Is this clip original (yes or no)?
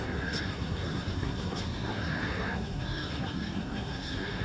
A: no